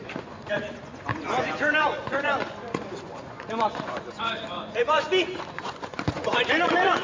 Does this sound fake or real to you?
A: fake